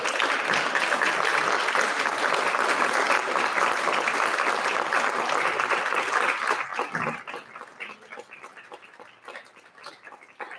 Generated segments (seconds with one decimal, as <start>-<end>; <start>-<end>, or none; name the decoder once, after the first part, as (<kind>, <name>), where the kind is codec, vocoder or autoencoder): none